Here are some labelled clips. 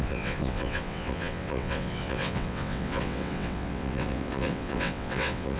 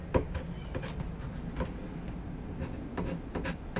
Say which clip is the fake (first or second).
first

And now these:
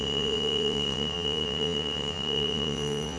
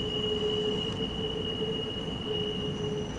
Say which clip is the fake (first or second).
first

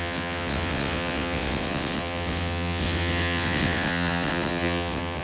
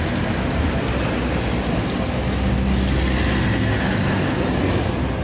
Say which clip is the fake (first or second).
first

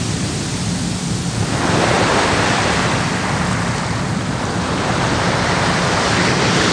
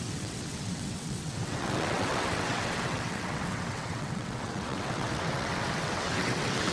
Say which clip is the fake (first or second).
second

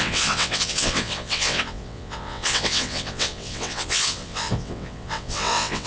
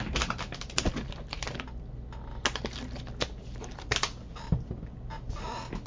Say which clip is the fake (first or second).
first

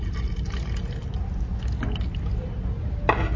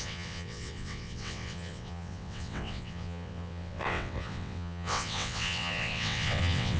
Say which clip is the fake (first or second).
second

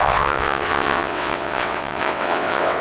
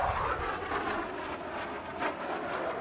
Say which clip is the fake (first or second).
first